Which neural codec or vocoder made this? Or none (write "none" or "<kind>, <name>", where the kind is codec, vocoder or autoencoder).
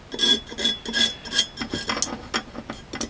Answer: none